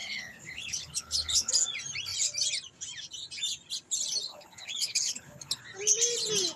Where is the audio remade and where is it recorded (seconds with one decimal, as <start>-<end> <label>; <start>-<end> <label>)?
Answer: 0.0-1.5 remade; 1.5-4.3 recorded; 4.3-5.6 remade; 5.6-6.6 recorded